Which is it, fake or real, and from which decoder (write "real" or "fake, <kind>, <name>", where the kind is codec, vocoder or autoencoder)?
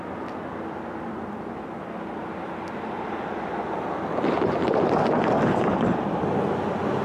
real